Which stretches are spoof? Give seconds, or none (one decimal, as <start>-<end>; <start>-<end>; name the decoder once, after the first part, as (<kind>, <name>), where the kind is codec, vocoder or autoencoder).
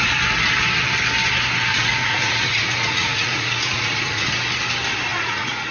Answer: 1.7-4.3 (vocoder, Vocos); 5.1-5.7